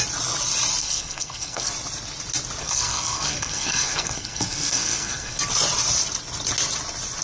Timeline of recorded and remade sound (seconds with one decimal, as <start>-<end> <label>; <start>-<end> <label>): 0.0-0.8 recorded; 0.8-1.7 remade; 1.7-2.6 recorded; 2.6-5.4 remade; 5.4-7.2 recorded